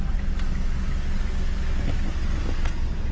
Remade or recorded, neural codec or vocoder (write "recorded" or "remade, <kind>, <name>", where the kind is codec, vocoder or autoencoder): recorded